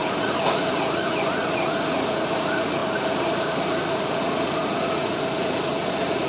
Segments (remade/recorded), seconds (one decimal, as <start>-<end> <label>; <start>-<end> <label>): 0.0-6.3 remade